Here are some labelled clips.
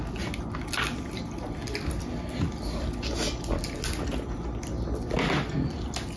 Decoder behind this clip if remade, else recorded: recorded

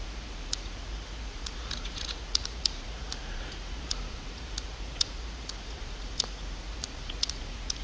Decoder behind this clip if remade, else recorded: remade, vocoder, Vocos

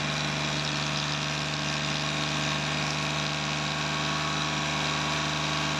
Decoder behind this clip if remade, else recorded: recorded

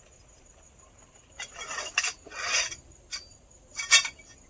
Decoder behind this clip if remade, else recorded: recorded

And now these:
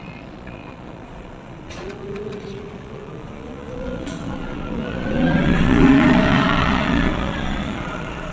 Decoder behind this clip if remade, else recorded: remade, vocoder, Vocos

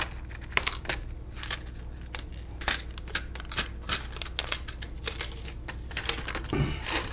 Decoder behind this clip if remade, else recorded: recorded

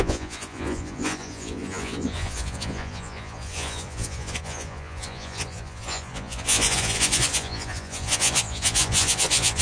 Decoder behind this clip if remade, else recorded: remade, vocoder, Vocos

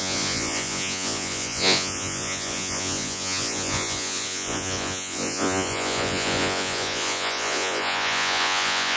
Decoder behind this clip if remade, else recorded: remade, vocoder, Vocos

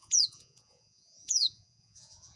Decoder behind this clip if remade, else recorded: remade, vocoder, Vocos